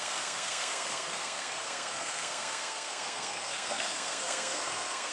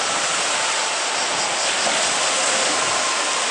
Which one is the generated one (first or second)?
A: first